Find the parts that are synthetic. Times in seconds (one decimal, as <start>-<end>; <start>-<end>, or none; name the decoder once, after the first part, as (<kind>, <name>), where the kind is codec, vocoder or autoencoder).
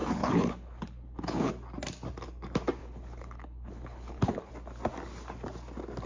0.0-1.5 (codec, HILCodec); 2.8-4.5